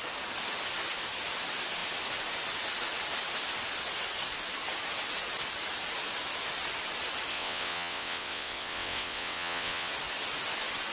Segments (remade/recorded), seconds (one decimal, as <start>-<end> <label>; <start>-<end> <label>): 0.0-7.3 recorded; 7.3-9.9 remade; 9.9-10.9 recorded